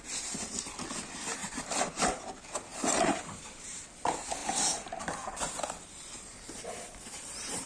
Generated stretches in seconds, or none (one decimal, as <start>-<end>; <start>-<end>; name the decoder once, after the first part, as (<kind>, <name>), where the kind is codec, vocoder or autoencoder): 1.4-2.0 (vocoder, BigVGAN v2); 2.7-3.8; 4.4-7.7